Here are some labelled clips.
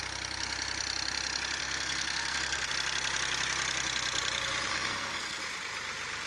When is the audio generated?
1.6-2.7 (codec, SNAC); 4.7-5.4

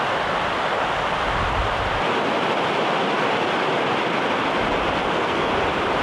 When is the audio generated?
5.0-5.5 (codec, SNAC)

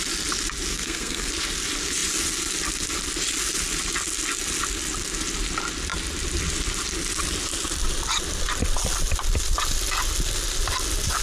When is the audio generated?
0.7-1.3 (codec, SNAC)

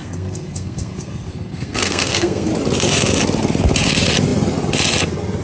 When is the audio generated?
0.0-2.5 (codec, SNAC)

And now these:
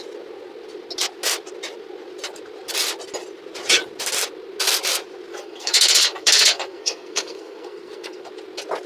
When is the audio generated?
5.3-8.3 (codec, SNAC)

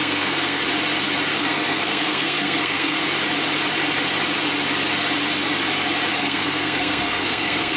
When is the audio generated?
0.0-0.6 (codec, SNAC); 1.3-3.0; 6.2-7.8